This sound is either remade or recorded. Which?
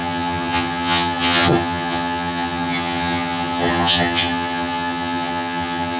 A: remade